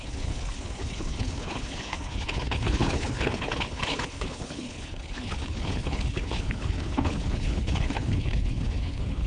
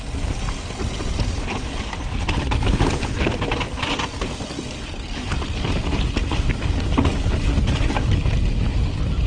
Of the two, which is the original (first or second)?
second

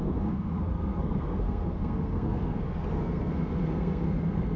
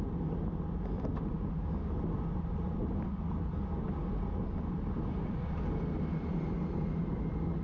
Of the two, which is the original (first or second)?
second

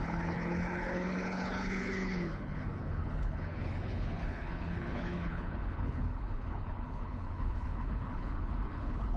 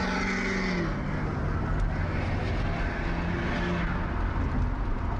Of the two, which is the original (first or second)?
second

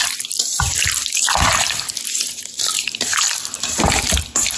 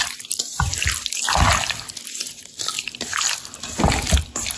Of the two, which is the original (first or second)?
second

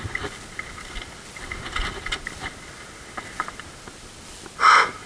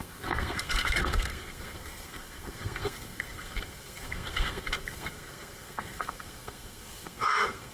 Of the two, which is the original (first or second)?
first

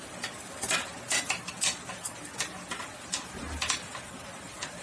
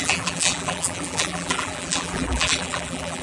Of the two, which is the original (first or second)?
first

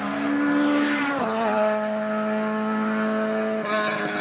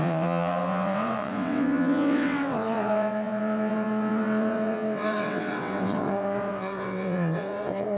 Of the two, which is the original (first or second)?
first